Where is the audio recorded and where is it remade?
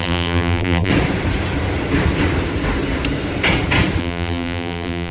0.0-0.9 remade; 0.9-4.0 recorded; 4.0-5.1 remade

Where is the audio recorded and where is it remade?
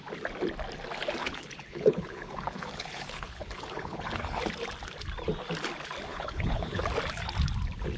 0.0-1.2 recorded; 1.2-4.4 remade; 4.4-6.1 recorded; 6.1-6.8 remade; 6.8-8.0 recorded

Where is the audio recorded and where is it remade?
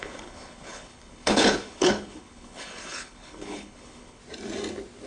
0.0-4.2 remade; 4.2-5.1 recorded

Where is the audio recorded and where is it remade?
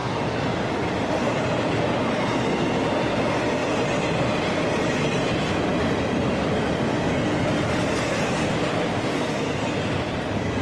0.0-10.6 recorded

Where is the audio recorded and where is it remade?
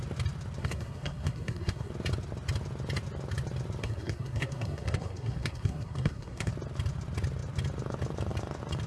0.0-0.6 recorded; 0.6-1.9 remade; 1.9-3.8 recorded; 3.8-6.5 remade; 6.5-8.9 recorded